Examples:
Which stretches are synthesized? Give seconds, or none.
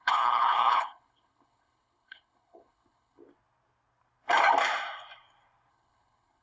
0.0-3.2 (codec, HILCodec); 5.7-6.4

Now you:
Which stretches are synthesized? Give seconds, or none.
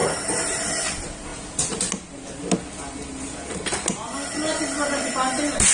none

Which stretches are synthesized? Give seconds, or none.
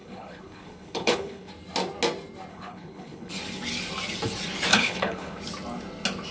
0.0-1.5 (codec, HILCodec); 2.5-3.3; 4.7-5.4